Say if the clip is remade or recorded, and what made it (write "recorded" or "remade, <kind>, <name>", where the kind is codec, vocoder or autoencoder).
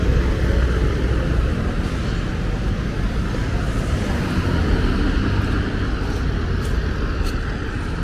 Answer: recorded